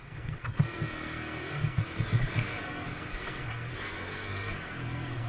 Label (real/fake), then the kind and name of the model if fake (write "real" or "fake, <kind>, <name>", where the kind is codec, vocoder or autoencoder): fake, codec, SNAC